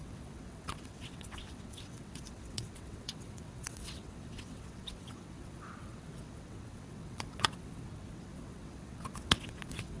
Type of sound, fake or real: fake